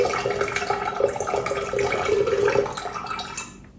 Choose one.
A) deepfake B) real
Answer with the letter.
B